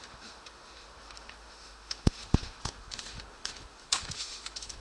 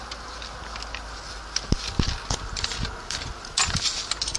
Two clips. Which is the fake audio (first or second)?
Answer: first